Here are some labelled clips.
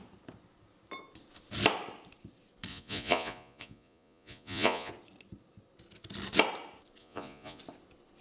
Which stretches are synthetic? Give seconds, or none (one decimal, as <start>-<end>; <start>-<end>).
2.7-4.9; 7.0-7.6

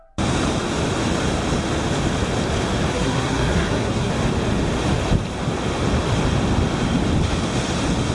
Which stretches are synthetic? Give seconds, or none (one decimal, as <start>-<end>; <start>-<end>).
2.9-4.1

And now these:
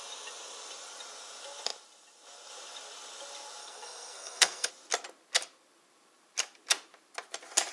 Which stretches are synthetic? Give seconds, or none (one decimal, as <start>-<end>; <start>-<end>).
3.6-4.7

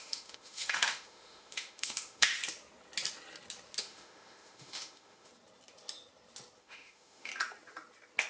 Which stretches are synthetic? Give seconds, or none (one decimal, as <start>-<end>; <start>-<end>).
0.0-2.4; 3.8-5.3; 6.6-7.3

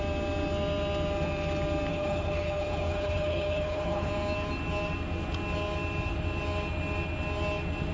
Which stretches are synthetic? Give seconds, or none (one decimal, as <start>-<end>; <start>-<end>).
1.9-4.1

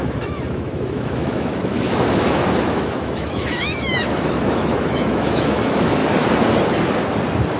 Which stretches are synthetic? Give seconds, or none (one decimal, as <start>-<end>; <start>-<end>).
0.0-6.0

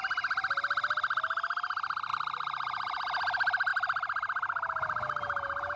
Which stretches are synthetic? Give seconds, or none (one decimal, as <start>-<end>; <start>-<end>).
none